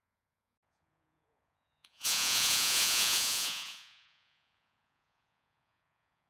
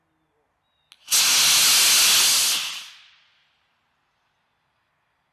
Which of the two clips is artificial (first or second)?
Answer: first